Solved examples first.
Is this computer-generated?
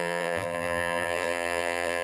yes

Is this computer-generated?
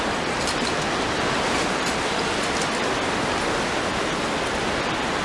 no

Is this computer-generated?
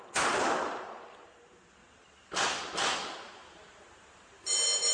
no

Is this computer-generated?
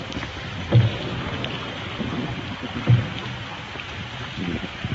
no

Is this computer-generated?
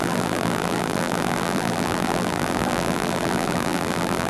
yes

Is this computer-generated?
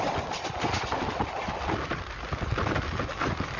no